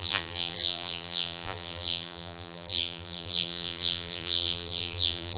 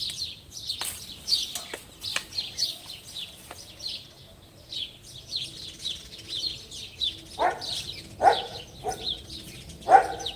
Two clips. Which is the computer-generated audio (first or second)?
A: first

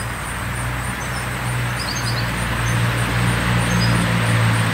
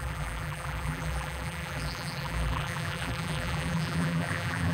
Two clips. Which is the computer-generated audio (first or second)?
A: second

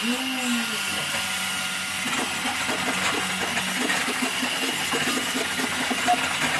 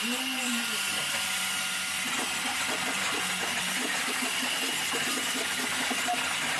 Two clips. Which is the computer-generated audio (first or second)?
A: second